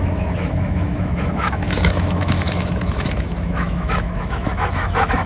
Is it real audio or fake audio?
fake